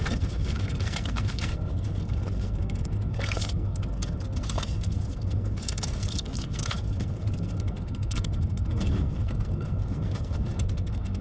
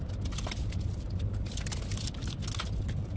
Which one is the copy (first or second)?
first